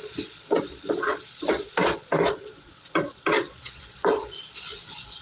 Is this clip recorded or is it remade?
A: remade